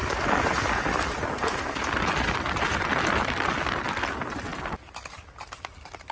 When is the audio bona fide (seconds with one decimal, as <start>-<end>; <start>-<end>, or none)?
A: 0.0-6.1